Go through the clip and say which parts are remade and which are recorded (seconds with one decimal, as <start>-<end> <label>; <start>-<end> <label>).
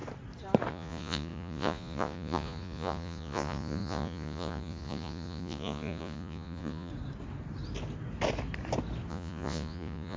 0.0-0.7 recorded; 0.7-6.9 remade; 6.9-9.1 recorded; 9.1-10.2 remade